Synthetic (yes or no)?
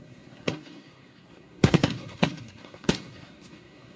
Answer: yes